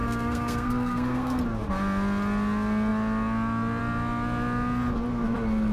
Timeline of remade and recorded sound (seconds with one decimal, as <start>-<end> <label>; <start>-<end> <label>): 0.0-1.4 remade; 1.4-5.7 recorded